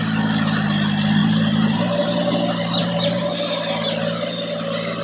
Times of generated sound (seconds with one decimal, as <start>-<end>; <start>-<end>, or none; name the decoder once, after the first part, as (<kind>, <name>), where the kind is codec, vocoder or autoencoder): 1.2-2.3 (vocoder, BigVGAN v2); 2.8-3.4